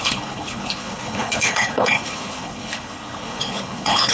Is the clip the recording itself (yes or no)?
no